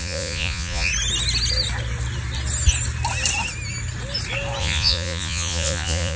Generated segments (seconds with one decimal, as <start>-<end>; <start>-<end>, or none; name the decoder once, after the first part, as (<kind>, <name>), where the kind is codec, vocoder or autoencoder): 0.0-0.9 (vocoder, Vocos); 4.6-6.2